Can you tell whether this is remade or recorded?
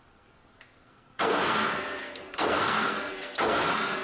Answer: remade